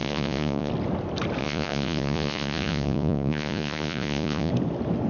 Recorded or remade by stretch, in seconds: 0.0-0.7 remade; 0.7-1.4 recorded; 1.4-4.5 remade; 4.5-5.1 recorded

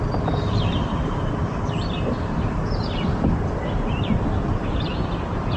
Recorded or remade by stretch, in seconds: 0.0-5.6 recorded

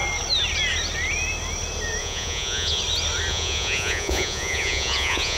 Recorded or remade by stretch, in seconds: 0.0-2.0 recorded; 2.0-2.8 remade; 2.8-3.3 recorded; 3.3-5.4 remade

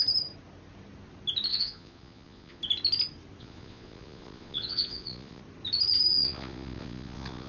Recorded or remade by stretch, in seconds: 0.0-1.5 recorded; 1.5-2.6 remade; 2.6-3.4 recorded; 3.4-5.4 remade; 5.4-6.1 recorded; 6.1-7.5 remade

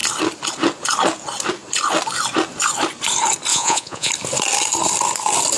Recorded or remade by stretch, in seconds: 0.0-3.5 recorded; 3.5-4.1 remade; 4.1-5.6 recorded

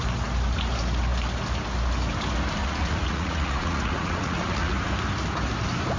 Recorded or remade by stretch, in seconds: 0.0-2.6 recorded; 2.6-4.7 remade; 4.7-6.0 recorded

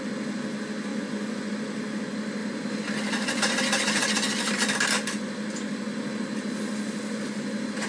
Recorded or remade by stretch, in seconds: 0.0-0.9 recorded; 0.9-1.5 remade; 1.5-7.9 recorded